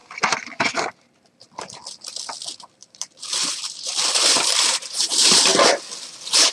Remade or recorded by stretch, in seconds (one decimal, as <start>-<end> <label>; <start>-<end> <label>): 0.0-2.8 recorded; 2.8-5.1 remade; 5.1-6.5 recorded